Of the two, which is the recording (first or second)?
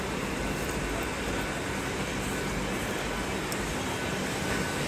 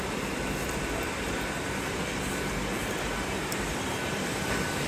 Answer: first